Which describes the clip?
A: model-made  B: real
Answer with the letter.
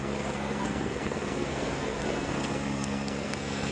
A